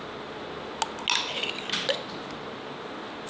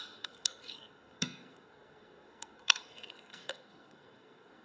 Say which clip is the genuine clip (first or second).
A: first